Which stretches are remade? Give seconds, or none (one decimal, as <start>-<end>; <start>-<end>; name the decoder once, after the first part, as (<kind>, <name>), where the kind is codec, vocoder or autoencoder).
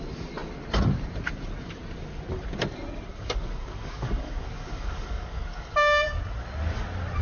3.1-6.2 (codec, DAC)